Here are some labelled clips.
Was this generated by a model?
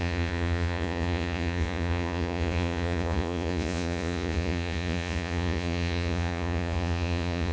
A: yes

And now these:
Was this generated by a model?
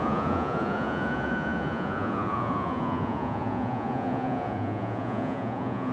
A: yes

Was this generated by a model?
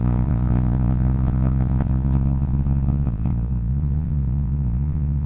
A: yes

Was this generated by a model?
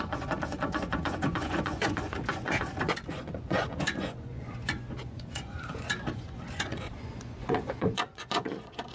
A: yes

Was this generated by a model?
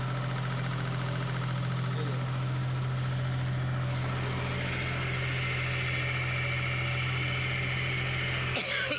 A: no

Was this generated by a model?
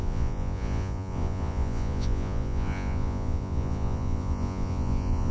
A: yes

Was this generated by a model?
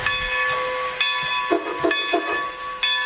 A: no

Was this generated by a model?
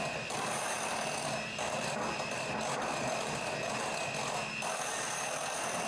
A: no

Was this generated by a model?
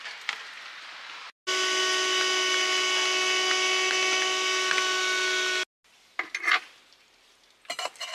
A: no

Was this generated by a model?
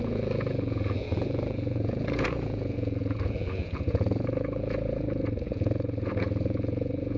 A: yes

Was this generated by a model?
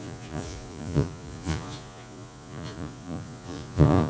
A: yes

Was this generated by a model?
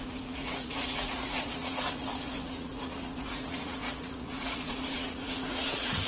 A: yes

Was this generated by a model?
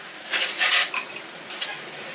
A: yes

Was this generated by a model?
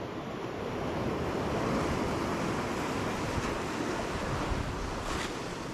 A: no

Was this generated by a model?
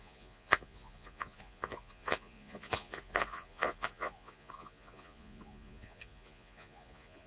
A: yes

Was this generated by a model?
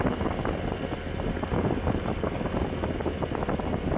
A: no